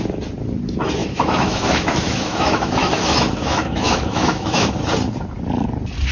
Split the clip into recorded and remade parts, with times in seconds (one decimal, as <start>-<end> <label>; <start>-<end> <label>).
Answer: 0.0-1.0 recorded; 1.0-4.7 remade; 4.7-6.1 recorded

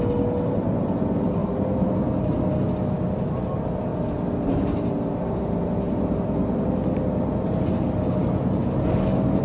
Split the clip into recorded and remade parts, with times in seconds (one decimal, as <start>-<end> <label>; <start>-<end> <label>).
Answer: 0.0-9.4 recorded

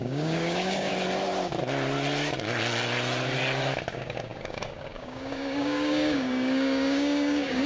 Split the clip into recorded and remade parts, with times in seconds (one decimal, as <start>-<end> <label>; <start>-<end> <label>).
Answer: 0.0-0.9 remade; 0.9-3.9 recorded; 3.9-7.7 remade

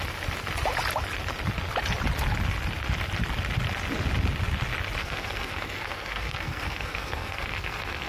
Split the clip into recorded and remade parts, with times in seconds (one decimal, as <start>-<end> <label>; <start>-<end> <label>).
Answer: 0.0-5.0 recorded; 5.0-8.1 remade

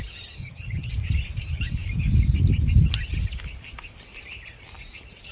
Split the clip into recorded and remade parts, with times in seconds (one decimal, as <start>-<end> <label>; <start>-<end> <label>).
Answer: 0.0-0.4 recorded; 0.4-0.9 remade; 0.9-5.3 recorded

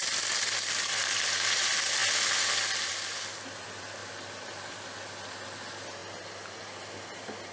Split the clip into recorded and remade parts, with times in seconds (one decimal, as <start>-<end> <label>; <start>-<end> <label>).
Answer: 0.0-7.5 recorded